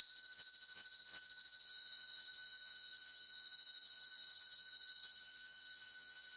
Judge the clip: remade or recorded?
remade